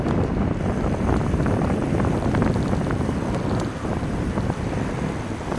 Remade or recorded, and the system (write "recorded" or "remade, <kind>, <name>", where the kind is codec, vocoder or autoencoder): remade, vocoder, BigVGAN v2